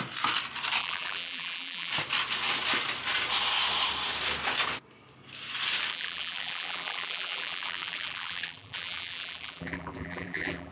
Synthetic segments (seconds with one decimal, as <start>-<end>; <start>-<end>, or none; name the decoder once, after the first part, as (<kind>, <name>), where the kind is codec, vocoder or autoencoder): 0.8-1.9 (vocoder, BigVGAN v2); 5.9-10.7

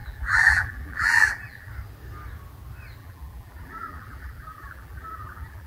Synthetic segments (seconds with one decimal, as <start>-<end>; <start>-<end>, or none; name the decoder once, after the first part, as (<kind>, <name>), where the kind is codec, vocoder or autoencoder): 0.0-1.7 (vocoder, BigVGAN v2); 3.0-5.7

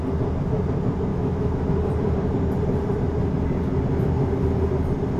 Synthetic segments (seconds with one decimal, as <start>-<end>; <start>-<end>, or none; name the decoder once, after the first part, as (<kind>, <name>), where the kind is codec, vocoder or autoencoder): 1.1-1.6 (autoencoder, DAC-VAE)

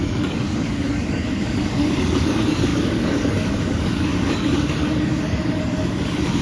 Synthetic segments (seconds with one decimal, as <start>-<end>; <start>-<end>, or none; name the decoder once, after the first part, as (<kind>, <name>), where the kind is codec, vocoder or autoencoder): 0.0-6.4 (codec, DAC)

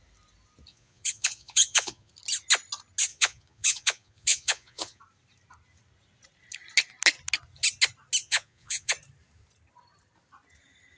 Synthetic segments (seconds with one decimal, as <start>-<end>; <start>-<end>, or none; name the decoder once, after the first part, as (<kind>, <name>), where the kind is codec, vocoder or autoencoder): 0.7-2.1 (vocoder, Vocos); 3.1-5.0; 8.2-8.9